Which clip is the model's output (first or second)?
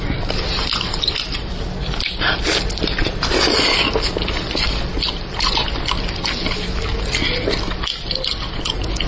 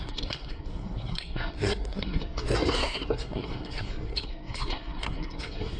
second